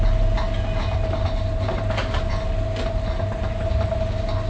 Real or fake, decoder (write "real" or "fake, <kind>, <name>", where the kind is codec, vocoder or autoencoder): real